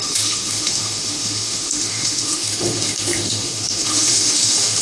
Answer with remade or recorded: remade